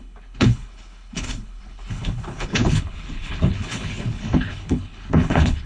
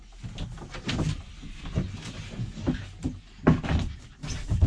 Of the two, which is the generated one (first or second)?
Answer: first